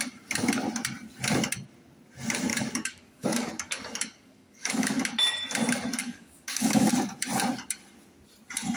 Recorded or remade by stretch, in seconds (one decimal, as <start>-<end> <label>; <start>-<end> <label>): 0.0-2.5 recorded; 2.5-5.0 remade; 5.0-6.0 recorded; 6.0-6.9 remade; 6.9-8.8 recorded